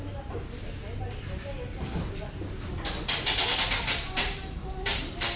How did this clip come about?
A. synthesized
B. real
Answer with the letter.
B